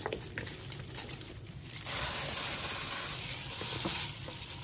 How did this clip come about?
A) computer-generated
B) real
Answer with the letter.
A